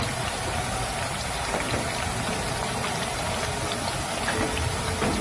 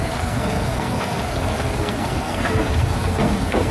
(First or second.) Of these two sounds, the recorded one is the first